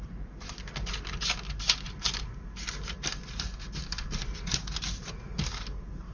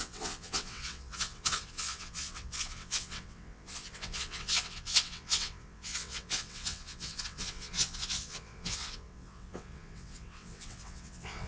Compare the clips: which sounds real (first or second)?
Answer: first